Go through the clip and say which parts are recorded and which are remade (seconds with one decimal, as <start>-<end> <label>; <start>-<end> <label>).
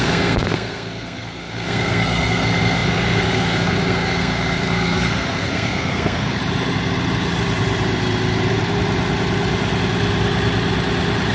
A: 0.0-6.4 remade; 6.4-11.3 recorded